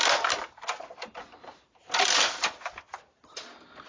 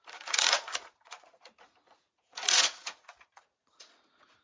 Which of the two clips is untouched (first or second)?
first